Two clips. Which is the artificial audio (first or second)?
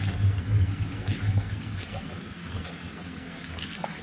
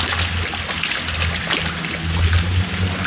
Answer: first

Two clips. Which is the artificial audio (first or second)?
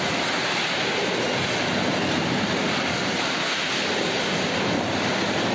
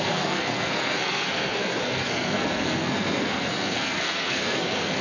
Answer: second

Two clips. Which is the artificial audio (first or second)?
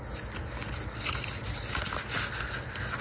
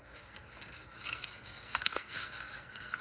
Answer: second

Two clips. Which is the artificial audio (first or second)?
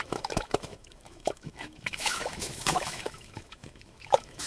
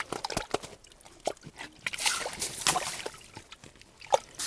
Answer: first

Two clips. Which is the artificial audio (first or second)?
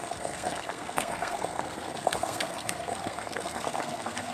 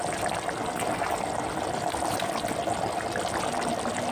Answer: first